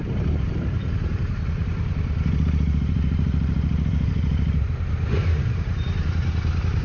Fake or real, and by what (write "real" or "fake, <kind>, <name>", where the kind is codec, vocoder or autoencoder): fake, vocoder, BigVGAN v2